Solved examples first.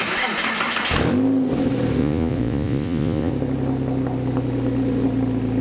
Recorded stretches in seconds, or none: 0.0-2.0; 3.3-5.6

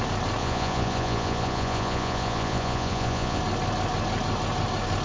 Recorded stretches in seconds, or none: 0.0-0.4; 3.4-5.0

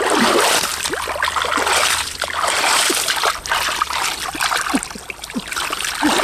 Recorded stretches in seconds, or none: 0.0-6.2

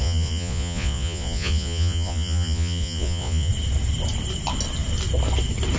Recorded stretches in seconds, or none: 3.5-5.8